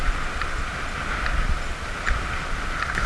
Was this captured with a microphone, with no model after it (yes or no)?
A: yes